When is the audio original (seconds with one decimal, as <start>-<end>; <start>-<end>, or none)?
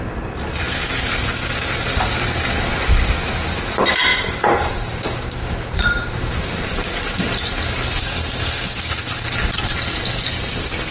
0.0-4.1; 6.1-10.9